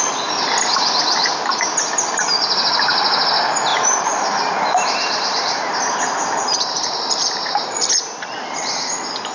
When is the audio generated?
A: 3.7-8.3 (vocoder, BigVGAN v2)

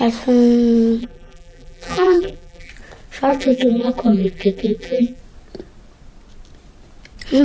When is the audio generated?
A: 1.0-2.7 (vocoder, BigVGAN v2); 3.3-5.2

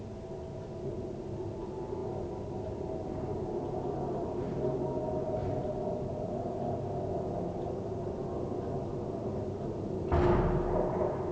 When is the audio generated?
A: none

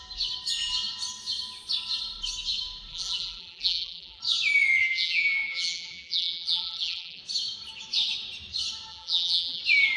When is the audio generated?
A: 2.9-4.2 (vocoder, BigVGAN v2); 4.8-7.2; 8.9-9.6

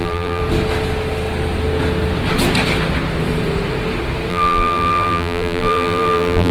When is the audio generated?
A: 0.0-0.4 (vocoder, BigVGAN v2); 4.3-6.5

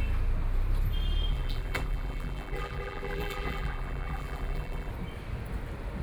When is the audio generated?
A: 1.3-4.9 (vocoder, BigVGAN v2)